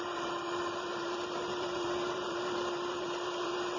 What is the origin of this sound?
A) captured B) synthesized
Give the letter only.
B